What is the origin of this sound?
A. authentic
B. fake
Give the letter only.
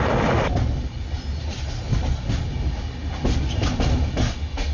A